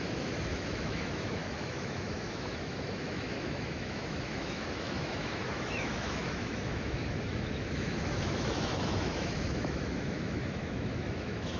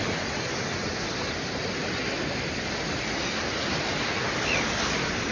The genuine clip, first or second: second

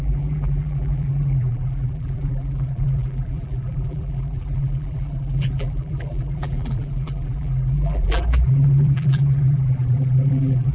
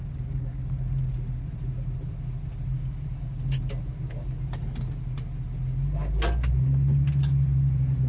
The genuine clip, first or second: second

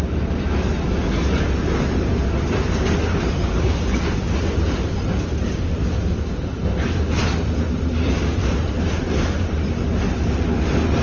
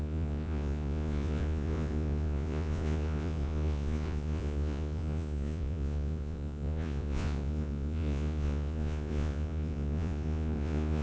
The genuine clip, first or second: first